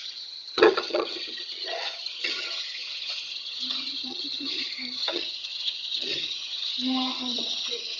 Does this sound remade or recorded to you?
remade